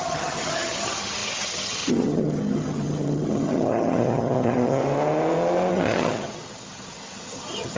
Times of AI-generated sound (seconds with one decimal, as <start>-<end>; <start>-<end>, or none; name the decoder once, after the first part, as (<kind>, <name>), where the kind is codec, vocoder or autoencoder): 0.0-4.8 (vocoder, HiFi-GAN); 5.7-7.8